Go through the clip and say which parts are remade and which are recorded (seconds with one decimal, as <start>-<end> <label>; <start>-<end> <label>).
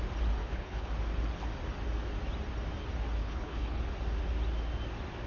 0.0-0.4 recorded; 0.4-0.9 remade; 0.9-3.2 recorded; 3.2-3.8 remade; 3.8-5.3 recorded